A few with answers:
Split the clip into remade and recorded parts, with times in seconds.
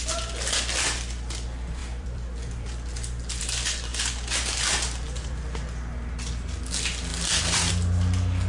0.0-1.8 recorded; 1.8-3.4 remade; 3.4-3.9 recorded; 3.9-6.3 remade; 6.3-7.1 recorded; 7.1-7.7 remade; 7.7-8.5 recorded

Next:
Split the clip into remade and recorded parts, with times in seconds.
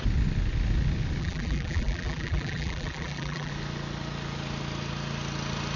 0.0-1.2 recorded; 1.2-3.5 remade; 3.5-5.8 recorded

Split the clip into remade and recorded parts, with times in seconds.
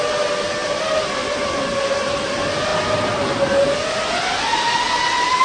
0.0-0.6 recorded; 0.6-1.8 remade; 1.8-5.4 recorded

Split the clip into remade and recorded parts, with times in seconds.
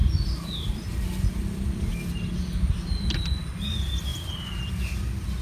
0.0-1.9 remade; 1.9-4.1 recorded; 4.1-4.7 remade; 4.7-5.4 recorded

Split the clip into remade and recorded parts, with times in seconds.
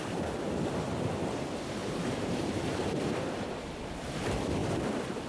0.0-1.8 recorded; 1.8-3.5 remade; 3.5-4.6 recorded; 4.6-5.3 remade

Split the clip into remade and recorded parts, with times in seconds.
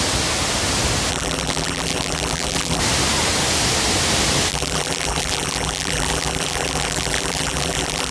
0.0-1.1 recorded; 1.1-2.8 remade; 2.8-4.5 recorded; 4.5-8.1 remade